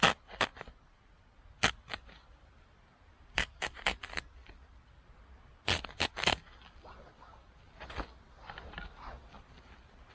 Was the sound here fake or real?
real